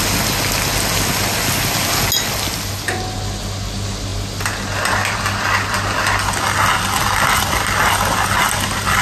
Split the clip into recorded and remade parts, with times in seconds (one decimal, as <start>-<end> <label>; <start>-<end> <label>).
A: 0.0-9.0 recorded